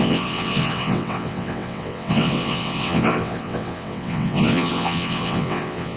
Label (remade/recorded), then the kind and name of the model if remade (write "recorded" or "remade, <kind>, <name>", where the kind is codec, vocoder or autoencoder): remade, vocoder, WaveNeXt